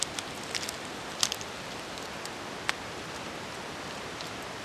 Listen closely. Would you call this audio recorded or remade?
recorded